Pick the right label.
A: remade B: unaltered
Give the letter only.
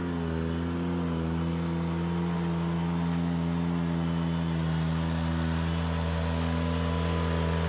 B